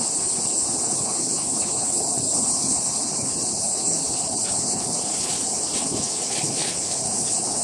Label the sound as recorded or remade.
remade